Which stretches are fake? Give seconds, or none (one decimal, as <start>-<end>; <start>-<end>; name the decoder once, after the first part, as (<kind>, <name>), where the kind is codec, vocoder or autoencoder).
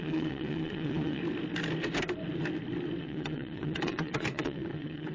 0.0-1.2 (vocoder, WaveNeXt); 3.0-5.1